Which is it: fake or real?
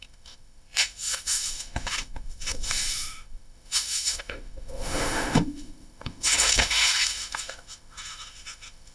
fake